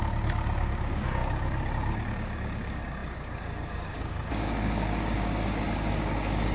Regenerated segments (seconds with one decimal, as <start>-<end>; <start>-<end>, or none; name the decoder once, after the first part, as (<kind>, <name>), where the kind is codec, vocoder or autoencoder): 0.0-6.5 (codec, DAC)